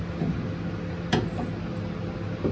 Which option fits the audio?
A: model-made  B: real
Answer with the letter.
B